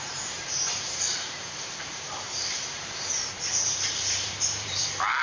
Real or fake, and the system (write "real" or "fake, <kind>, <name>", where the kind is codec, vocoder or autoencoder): fake, vocoder, BigVGAN v2